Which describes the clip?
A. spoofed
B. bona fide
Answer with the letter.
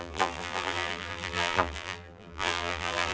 A